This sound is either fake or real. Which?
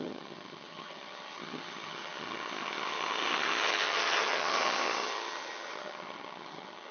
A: fake